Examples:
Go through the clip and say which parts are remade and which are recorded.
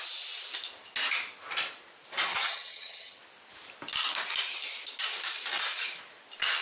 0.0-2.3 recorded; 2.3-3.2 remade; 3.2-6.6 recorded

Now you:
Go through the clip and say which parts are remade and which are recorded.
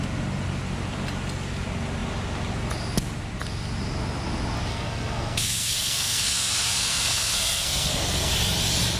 0.0-4.7 recorded; 4.7-8.3 remade; 8.3-9.0 recorded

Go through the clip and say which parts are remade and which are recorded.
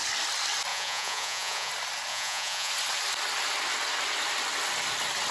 0.0-0.7 recorded; 0.7-1.7 remade; 1.7-2.1 recorded; 2.1-2.7 remade; 2.7-5.3 recorded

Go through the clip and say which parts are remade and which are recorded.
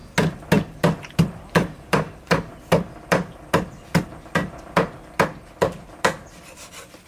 0.0-1.5 recorded; 1.5-2.5 remade; 2.5-7.1 recorded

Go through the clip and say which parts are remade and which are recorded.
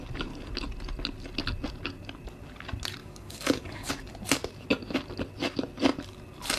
0.0-3.0 recorded; 3.0-3.9 remade; 3.9-6.6 recorded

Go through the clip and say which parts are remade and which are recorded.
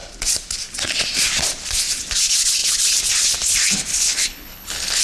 0.0-3.9 recorded; 3.9-5.0 remade